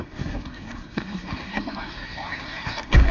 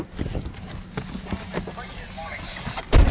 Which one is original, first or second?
second